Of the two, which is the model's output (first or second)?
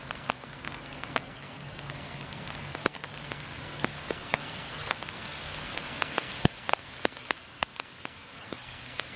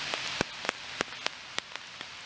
first